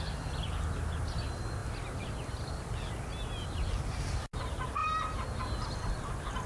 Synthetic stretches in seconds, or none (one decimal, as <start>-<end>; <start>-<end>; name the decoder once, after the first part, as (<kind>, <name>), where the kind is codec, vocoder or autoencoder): none